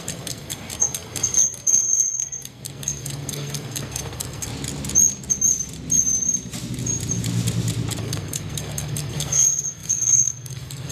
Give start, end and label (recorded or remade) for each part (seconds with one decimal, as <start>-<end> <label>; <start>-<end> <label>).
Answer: 0.0-4.5 remade; 4.5-8.0 recorded; 8.0-10.9 remade